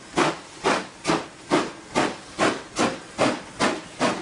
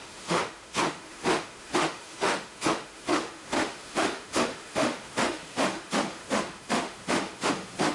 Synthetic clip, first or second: second